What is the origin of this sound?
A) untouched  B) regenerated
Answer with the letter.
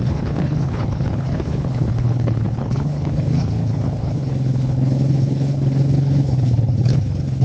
B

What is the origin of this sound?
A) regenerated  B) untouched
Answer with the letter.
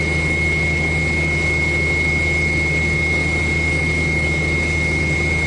B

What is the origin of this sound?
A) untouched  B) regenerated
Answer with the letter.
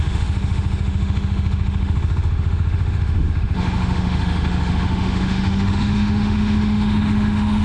B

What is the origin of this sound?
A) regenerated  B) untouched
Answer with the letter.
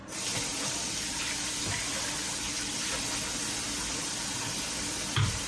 B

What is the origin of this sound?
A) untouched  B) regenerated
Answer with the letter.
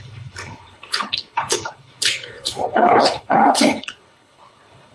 B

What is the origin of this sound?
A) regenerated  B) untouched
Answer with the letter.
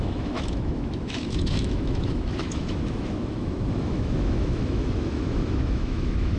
A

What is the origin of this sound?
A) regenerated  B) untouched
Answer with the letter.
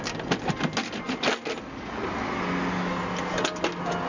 B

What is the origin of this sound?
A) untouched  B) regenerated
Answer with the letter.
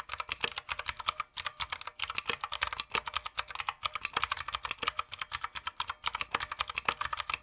A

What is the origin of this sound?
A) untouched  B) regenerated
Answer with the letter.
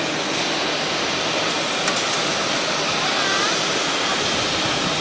A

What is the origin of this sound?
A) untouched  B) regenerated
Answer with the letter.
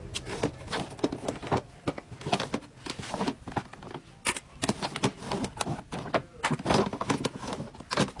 A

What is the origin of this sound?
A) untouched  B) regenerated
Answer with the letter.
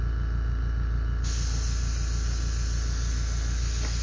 A